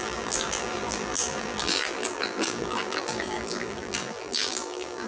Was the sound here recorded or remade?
remade